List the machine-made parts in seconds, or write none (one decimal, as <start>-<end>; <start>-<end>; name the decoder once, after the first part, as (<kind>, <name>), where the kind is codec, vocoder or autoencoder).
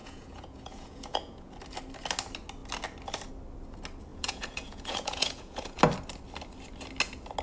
0.0-1.5 (vocoder, Vocos); 4.1-5.8